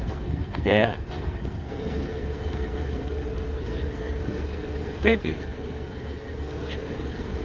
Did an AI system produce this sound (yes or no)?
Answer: yes